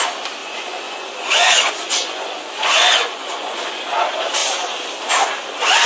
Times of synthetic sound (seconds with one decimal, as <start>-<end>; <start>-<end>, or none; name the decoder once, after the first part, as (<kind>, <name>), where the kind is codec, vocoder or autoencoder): 0.4-3.9 (vocoder, Vocos)